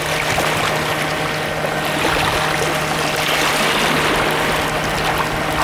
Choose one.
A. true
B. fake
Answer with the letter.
A